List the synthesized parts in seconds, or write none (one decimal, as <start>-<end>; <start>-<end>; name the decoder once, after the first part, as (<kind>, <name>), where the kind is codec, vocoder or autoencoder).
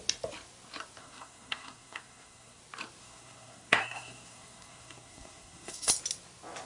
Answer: 1.0-2.6 (codec, SNAC); 3.0-5.9